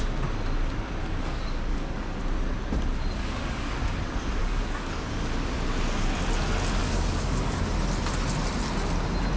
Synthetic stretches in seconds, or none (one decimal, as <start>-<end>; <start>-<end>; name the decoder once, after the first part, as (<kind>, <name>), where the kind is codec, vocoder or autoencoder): 1.0-2.2 (codec, DAC); 3.2-4.0; 4.4-5.1; 6.8-7.6